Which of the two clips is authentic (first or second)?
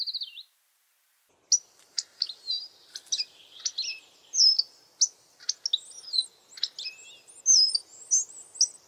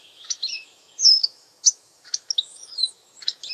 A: first